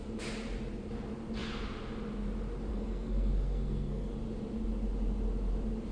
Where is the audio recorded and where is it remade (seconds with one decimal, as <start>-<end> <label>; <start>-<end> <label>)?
0.0-2.7 recorded; 2.7-4.1 remade; 4.1-5.9 recorded